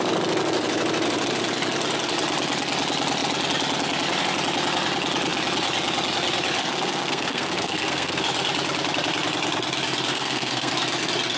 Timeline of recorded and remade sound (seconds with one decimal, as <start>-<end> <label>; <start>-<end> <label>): 0.0-6.6 recorded; 6.6-8.2 remade; 8.2-10.1 recorded; 10.1-10.7 remade; 10.7-11.4 recorded